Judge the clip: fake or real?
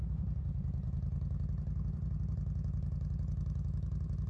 fake